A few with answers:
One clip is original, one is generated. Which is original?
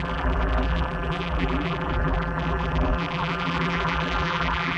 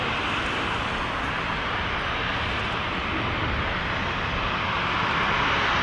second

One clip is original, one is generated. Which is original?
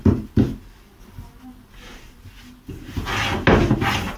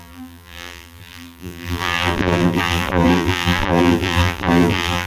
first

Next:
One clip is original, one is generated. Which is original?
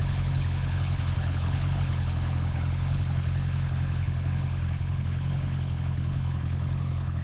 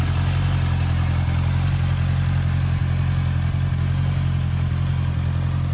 second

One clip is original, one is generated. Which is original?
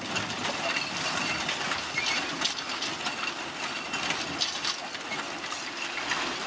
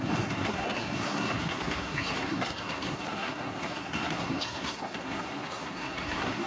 first